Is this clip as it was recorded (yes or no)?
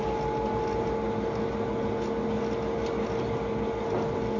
yes